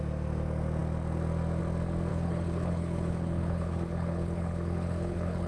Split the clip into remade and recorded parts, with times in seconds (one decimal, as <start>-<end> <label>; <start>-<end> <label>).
0.0-2.1 recorded; 2.1-5.5 remade